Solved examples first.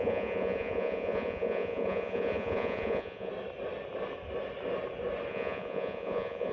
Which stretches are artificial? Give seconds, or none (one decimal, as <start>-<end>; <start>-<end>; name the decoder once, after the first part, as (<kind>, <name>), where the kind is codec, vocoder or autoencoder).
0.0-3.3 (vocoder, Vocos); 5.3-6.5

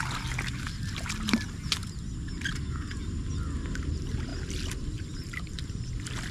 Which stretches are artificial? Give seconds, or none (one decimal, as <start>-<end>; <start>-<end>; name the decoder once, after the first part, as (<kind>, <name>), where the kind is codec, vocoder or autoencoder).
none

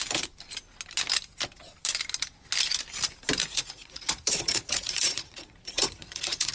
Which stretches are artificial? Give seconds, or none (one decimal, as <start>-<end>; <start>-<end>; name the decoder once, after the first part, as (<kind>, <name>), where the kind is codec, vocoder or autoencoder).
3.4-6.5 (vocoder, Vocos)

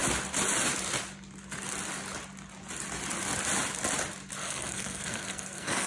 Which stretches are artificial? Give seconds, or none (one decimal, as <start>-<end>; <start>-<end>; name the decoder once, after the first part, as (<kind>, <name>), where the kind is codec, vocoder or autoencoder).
4.4-5.9 (codec, SNAC)

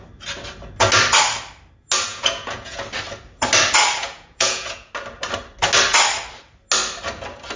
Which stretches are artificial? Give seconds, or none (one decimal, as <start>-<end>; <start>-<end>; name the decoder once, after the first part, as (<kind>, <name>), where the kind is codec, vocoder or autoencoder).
2.1-2.8 (vocoder, Vocos); 4.0-4.9

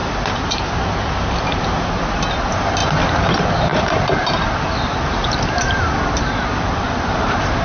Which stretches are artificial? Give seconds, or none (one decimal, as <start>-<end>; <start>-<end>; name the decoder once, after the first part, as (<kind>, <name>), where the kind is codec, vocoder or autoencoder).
0.0-2.8 (vocoder, BigVGAN v2); 3.3-7.6

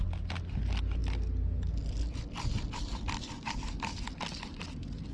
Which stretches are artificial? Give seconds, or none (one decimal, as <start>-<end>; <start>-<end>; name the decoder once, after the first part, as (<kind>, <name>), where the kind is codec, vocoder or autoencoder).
none

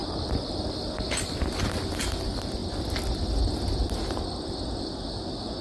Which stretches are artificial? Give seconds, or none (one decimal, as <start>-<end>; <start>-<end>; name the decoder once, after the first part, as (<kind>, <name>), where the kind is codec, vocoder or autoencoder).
none